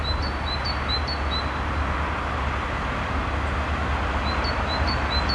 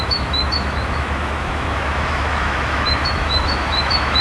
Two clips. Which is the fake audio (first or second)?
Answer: second